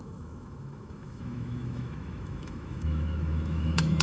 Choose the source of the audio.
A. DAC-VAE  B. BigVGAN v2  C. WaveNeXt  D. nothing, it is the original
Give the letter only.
A